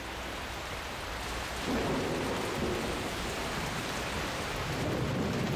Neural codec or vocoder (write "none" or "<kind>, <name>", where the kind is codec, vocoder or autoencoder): vocoder, BigVGAN v2